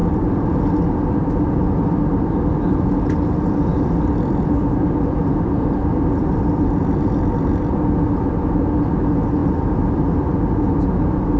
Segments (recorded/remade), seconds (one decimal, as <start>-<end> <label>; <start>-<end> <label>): 0.0-0.8 remade; 0.8-3.7 recorded; 3.7-7.7 remade; 7.7-9.4 recorded; 9.4-10.0 remade; 10.0-11.4 recorded